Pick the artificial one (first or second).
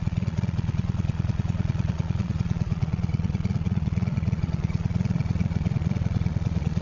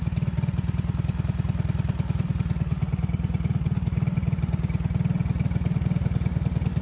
first